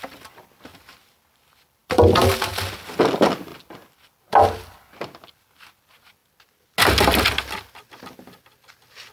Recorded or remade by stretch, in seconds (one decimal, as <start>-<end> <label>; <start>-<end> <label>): 0.0-9.1 recorded